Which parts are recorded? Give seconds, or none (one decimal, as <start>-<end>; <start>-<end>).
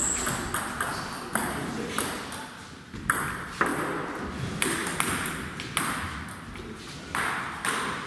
0.0-8.1